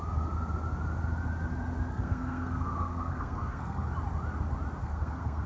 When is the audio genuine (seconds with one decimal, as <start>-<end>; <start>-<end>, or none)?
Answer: 0.0-1.9; 3.9-4.8